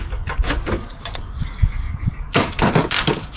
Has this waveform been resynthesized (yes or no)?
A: yes